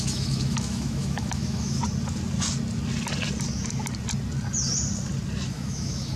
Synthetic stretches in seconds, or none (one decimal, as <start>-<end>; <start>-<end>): 0.0-1.8; 5.5-6.2